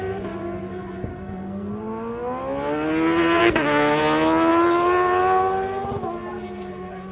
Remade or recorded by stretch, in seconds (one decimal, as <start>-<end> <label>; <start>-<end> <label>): 0.0-1.1 recorded; 1.1-1.7 remade; 1.7-3.4 recorded; 3.4-4.0 remade; 4.0-7.1 recorded